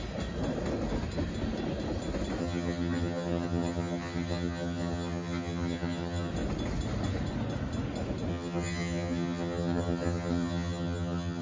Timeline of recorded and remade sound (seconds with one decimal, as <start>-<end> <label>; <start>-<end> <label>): 0.0-2.4 recorded; 2.4-6.3 remade; 6.3-8.3 recorded; 8.3-11.4 remade